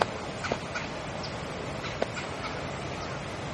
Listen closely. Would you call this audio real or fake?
real